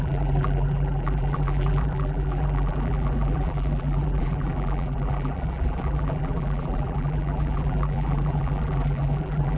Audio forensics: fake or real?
fake